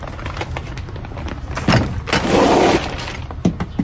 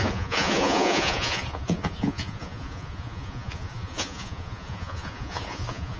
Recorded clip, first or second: first